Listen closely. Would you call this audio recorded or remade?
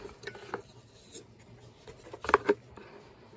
recorded